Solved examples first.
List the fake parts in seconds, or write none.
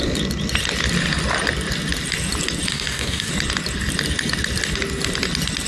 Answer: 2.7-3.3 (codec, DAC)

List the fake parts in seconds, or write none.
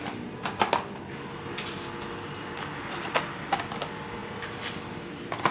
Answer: none